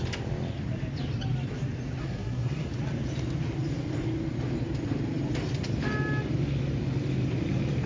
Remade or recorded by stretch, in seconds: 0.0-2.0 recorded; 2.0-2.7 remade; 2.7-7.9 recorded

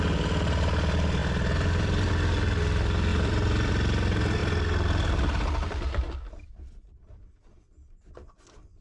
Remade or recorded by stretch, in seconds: 0.0-1.2 recorded; 1.2-2.1 remade; 2.1-3.1 recorded; 3.1-3.7 remade; 3.7-8.8 recorded

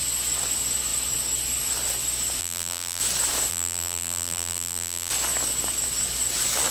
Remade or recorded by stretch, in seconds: 0.0-2.4 recorded; 2.4-3.0 remade; 3.0-3.5 recorded; 3.5-5.1 remade; 5.1-6.7 recorded

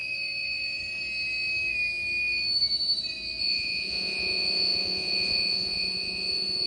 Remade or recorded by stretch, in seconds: 0.0-3.4 recorded; 3.4-6.7 remade

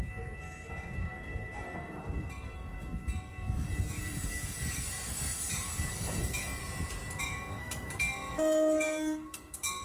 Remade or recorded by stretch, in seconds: 0.0-6.6 remade; 6.6-7.2 recorded; 7.2-9.8 remade

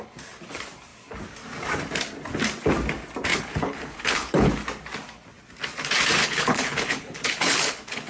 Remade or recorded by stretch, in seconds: 0.0-3.3 recorded; 3.3-4.5 remade; 4.5-6.2 recorded; 6.2-8.1 remade

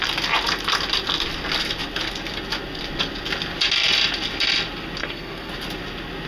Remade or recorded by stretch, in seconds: 0.0-5.0 recorded; 5.0-5.5 remade; 5.5-6.3 recorded

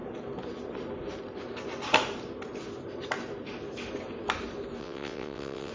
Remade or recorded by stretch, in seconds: 0.0-4.8 recorded; 4.8-5.7 remade